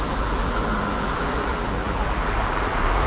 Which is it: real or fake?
fake